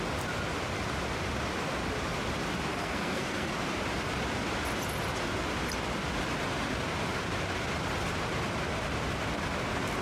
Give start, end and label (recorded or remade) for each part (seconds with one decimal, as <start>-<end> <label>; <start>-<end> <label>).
0.0-2.7 recorded; 2.7-3.5 remade; 3.5-10.0 recorded